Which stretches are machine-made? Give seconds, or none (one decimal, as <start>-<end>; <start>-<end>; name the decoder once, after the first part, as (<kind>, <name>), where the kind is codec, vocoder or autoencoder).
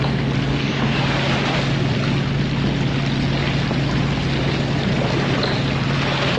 0.5-1.0 (codec, DAC)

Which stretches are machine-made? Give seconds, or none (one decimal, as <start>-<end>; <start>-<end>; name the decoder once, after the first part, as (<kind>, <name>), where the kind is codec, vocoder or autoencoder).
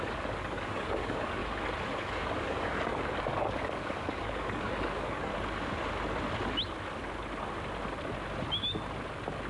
0.0-1.4 (codec, DAC); 2.0-5.3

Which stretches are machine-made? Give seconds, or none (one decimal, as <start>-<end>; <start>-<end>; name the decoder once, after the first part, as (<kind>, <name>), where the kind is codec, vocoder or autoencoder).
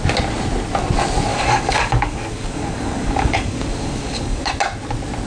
1.3-4.5 (codec, DAC)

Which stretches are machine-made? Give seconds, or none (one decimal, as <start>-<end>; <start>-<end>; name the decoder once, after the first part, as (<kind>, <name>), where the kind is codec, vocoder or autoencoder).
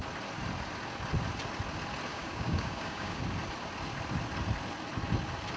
2.1-3.2 (codec, DAC)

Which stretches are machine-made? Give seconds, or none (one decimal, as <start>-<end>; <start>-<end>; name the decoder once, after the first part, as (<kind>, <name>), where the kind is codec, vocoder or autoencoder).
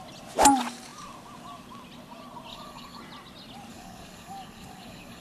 2.5-3.0 (codec, DAC); 3.7-5.2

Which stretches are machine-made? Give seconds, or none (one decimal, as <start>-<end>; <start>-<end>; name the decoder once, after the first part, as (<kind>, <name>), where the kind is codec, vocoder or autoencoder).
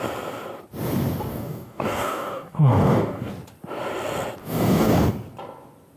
1.3-3.3 (codec, DAC); 4.4-5.0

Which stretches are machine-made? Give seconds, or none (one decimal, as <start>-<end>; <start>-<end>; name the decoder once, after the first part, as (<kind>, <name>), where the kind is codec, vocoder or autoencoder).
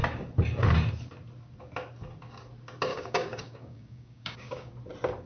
2.9-4.7 (codec, DAC)